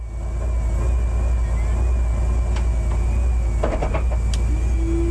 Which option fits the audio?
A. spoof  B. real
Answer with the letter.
B